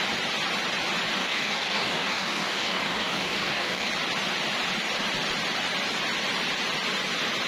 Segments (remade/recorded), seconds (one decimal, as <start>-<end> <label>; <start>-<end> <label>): 0.0-1.2 recorded; 1.2-3.9 remade; 3.9-7.5 recorded